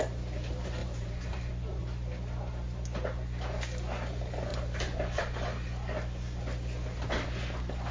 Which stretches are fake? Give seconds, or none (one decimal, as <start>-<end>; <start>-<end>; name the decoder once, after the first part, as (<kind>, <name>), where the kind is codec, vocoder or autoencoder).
0.8-1.8 (vocoder, BigVGAN v2); 4.5-5.2